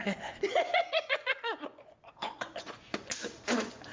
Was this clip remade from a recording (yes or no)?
yes